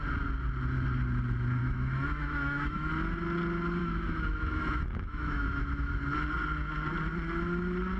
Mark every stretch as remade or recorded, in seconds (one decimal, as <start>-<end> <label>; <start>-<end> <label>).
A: 0.0-1.6 recorded; 1.6-2.9 remade; 2.9-3.8 recorded; 3.8-5.9 remade; 5.9-8.0 recorded

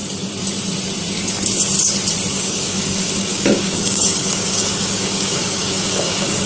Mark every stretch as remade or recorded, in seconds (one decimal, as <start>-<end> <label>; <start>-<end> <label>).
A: 0.0-2.3 recorded; 2.3-6.5 remade

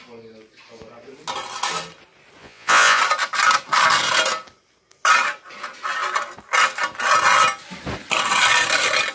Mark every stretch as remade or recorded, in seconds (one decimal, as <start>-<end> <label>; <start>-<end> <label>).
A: 0.0-2.4 recorded; 2.4-3.0 remade; 3.0-9.1 recorded

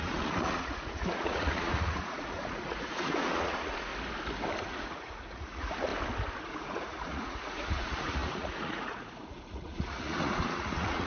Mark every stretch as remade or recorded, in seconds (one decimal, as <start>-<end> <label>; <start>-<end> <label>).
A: 0.0-3.9 remade; 3.9-4.6 recorded; 4.6-5.9 remade; 5.9-6.4 recorded; 6.4-11.1 remade

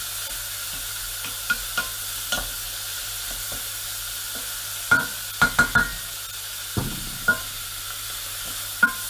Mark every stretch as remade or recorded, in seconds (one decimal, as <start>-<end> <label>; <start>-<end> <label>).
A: 0.0-9.1 recorded

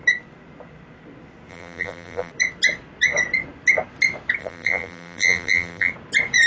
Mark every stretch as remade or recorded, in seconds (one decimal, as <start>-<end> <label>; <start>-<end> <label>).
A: 0.0-1.5 recorded; 1.5-2.3 remade; 2.3-4.4 recorded; 4.4-5.9 remade; 5.9-6.5 recorded

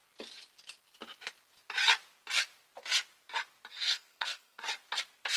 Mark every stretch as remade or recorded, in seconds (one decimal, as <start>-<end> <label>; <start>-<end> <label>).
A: 0.0-3.7 recorded; 3.7-4.6 remade; 4.6-5.4 recorded